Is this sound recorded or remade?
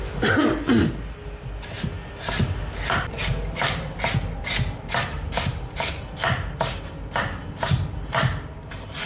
recorded